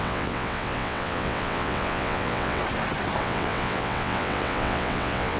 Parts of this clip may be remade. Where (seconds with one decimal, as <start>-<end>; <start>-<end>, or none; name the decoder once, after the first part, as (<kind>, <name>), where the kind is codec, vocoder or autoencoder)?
0.0-2.6 (vocoder, WaveNeXt); 3.2-5.4